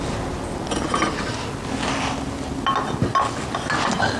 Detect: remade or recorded recorded